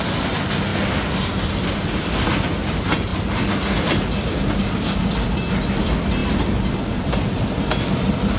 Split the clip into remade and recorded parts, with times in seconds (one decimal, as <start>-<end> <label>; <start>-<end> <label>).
0.0-8.4 recorded